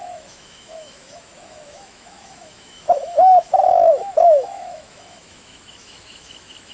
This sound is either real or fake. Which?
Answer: fake